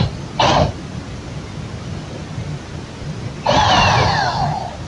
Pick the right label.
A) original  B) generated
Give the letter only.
A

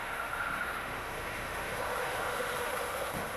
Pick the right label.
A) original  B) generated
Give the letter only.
B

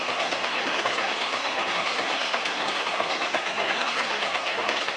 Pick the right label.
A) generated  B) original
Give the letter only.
A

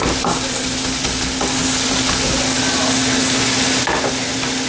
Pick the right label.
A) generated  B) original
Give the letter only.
B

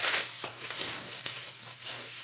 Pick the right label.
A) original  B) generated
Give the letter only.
B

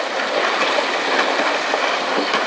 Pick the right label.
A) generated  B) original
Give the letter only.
B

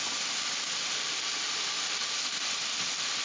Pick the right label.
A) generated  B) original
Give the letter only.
B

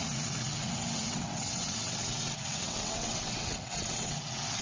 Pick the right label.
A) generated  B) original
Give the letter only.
A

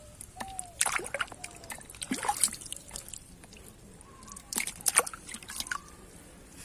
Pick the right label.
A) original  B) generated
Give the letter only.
A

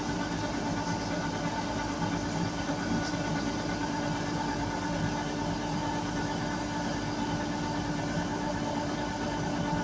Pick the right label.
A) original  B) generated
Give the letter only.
A